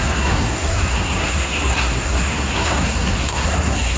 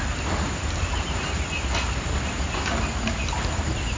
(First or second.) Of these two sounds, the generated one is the first